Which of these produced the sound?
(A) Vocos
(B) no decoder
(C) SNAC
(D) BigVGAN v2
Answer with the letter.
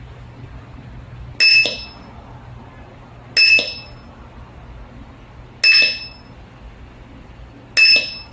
B